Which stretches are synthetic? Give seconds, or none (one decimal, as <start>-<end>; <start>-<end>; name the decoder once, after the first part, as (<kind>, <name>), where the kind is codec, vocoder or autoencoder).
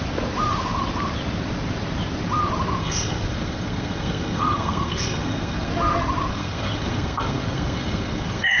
2.8-5.7 (codec, SNAC); 6.3-8.6